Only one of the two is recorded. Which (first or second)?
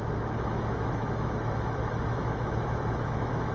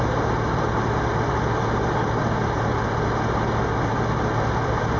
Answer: second